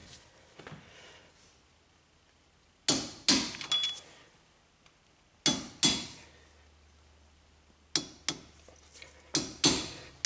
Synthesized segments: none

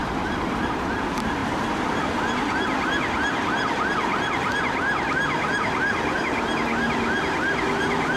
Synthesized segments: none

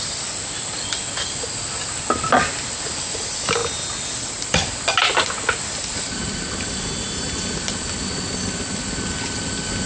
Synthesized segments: none

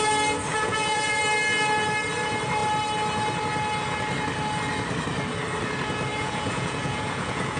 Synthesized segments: 0.5-1.2 (vocoder, Vocos); 6.1-7.6

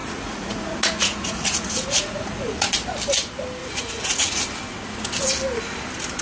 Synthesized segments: 0.0-2.7 (vocoder, Vocos); 3.6-4.4

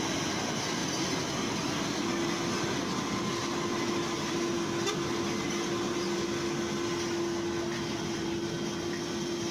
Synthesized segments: none

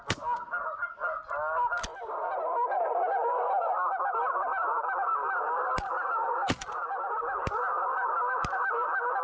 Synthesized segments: none